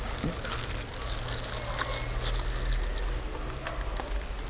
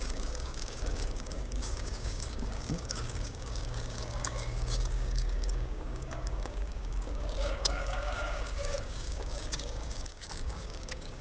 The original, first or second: first